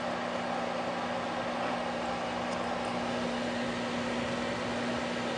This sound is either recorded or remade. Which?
recorded